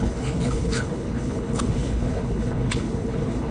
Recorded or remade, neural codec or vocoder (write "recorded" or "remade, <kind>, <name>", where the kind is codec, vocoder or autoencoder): remade, codec, HILCodec